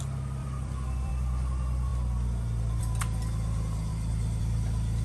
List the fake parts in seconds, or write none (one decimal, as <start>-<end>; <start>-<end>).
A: 0.4-1.1; 3.9-4.4